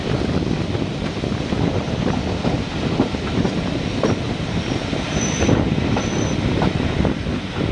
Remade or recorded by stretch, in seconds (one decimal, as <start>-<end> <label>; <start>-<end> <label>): 0.0-7.7 remade

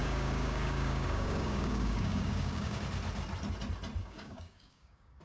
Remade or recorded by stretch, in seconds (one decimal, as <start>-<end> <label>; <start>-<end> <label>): 0.0-2.8 remade; 2.8-4.0 recorded; 4.0-5.2 remade